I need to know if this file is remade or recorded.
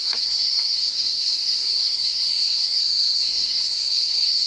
remade